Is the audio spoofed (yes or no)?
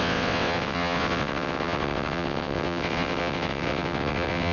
yes